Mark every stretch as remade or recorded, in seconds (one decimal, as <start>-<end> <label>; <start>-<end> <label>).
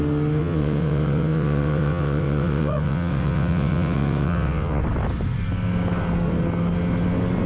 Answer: 0.0-0.4 recorded; 0.4-4.8 remade; 4.8-7.5 recorded